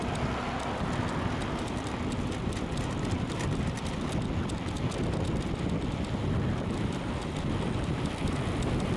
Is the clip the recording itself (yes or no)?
yes